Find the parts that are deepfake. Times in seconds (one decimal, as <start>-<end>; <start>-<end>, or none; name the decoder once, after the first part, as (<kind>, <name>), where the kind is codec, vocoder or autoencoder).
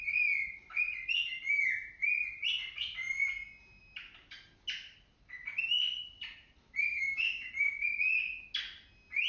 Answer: 6.8-7.5 (codec, DAC)